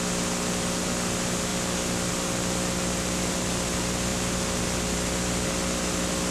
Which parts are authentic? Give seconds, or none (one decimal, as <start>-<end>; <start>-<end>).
0.0-6.3

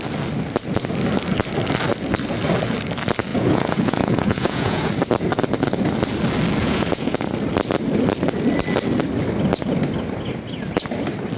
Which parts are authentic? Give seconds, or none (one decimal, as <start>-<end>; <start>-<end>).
0.0-3.3; 4.9-6.6; 7.2-11.4